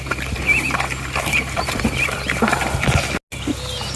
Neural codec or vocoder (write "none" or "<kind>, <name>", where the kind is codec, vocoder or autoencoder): none